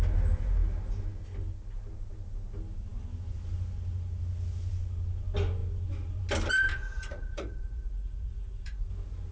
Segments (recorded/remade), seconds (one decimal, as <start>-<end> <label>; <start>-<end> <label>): 0.0-6.7 recorded; 6.7-8.9 remade; 8.9-9.3 recorded